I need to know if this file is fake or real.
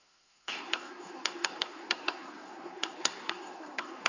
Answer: fake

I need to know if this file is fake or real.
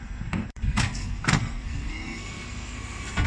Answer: fake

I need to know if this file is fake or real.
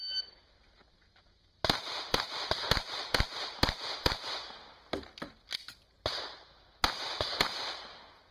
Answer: real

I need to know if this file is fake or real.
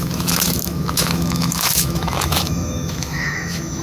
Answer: fake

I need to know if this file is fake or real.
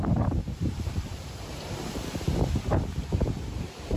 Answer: fake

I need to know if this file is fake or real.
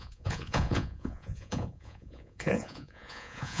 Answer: fake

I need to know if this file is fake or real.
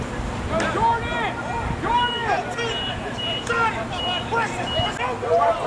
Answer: real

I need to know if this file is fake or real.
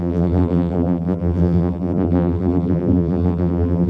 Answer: fake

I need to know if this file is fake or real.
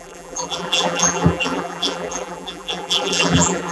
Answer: fake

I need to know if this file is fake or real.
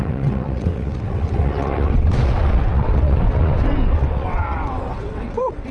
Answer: fake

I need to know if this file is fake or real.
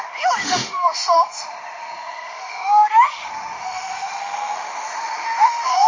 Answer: fake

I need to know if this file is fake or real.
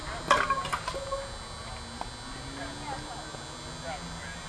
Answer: real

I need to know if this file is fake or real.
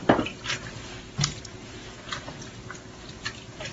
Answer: fake